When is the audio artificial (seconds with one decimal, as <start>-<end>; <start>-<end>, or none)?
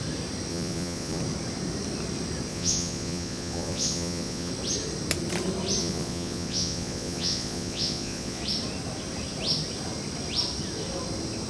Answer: 0.5-1.2; 2.5-4.5; 5.8-8.4